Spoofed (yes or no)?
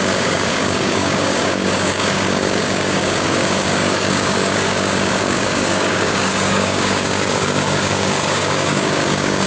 yes